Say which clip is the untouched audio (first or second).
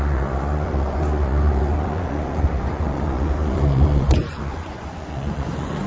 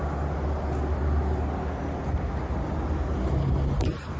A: second